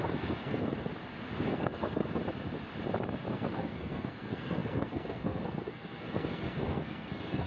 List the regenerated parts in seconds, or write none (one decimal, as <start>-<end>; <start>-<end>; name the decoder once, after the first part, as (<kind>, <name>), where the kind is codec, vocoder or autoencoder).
0.0-0.9 (codec, SNAC); 1.5-2.2; 3.3-7.5